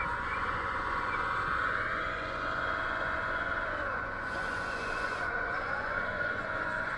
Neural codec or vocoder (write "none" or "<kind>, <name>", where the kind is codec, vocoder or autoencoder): vocoder, Vocos